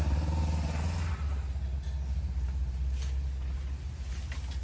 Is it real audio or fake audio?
real